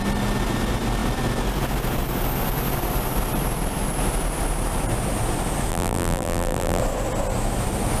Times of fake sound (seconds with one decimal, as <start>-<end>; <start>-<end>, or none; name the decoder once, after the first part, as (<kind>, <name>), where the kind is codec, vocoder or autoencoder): 5.7-6.8 (vocoder, BigVGAN v2)